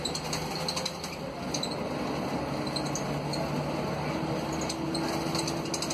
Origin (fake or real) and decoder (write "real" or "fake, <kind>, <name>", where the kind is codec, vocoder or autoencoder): real